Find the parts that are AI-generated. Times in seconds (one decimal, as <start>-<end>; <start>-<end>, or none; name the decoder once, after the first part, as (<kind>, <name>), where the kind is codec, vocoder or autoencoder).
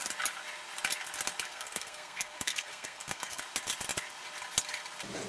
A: 1.5-3.4 (codec, SNAC)